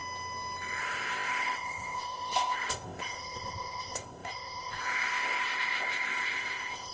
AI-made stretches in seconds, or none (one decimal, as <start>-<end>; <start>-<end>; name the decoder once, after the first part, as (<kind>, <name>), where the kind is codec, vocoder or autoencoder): 0.8-6.9 (codec, ZipCodec)